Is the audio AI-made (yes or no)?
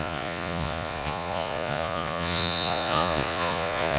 yes